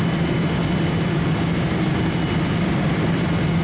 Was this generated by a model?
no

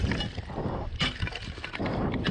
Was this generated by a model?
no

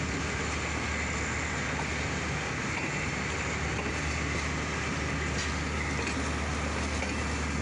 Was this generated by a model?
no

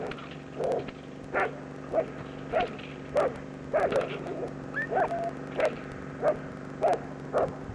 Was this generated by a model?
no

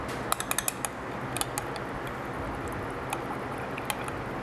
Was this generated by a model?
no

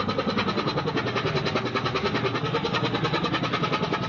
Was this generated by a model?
no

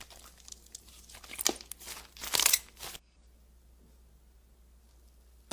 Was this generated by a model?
no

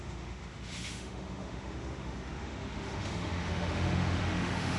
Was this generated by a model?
yes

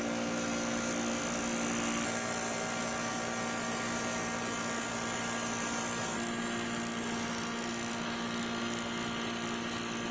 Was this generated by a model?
no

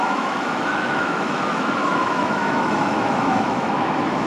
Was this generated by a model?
yes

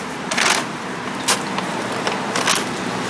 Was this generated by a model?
no